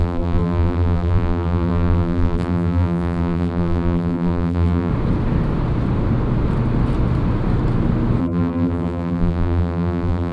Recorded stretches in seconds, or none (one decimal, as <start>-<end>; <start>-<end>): 4.9-8.2